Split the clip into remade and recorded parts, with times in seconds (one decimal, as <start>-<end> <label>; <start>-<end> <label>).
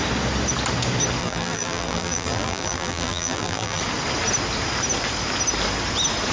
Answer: 0.0-1.2 recorded; 1.2-3.8 remade; 3.8-6.3 recorded